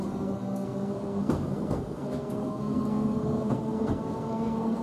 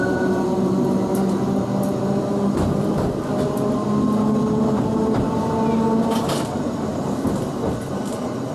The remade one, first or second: first